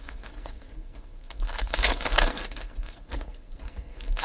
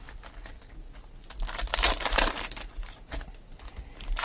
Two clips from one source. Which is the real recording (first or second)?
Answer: second